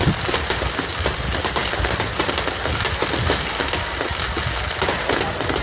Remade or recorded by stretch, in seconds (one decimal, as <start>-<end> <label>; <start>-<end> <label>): 0.0-5.6 recorded